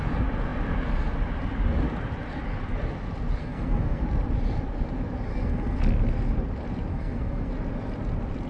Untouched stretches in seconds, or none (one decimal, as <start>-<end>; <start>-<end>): 0.0-3.4; 4.0-5.3; 5.8-6.9; 7.5-8.5